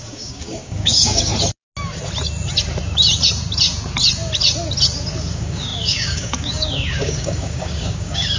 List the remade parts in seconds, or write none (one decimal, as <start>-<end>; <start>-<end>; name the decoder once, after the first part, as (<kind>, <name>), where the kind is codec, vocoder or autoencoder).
0.0-1.3 (codec, DAC); 5.3-8.4